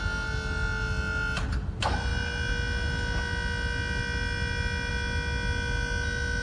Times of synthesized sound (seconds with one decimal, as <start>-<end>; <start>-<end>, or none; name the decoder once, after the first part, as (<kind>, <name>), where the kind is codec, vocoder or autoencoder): none